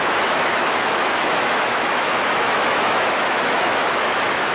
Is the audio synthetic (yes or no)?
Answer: yes